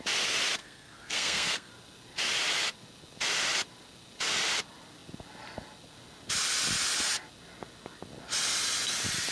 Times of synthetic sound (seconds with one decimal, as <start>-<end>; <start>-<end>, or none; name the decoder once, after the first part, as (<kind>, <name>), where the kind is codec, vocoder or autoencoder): 0.6-1.7 (codec, SNAC)